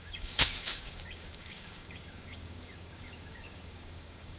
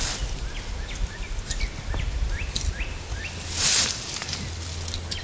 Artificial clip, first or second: first